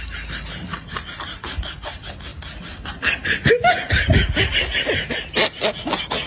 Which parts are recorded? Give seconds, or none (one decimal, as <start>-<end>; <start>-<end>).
0.0-6.3